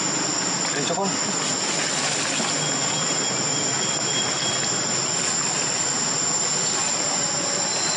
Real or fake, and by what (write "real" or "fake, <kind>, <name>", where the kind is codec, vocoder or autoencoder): real